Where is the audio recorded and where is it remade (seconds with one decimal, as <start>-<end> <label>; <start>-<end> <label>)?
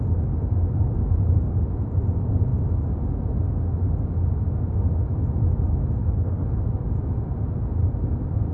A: 0.0-6.0 recorded; 6.0-6.6 remade; 6.6-8.5 recorded